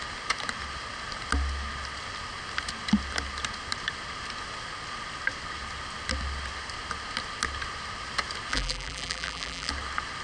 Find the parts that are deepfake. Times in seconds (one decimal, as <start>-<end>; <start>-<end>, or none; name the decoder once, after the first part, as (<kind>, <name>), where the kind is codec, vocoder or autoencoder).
8.5-9.7 (vocoder, BigVGAN v2)